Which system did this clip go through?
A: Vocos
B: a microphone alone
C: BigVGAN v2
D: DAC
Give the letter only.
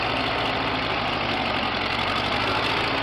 C